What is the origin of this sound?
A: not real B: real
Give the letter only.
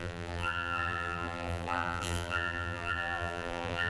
A